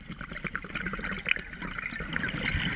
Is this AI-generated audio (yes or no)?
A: no